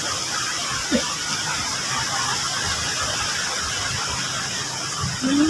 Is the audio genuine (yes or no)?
yes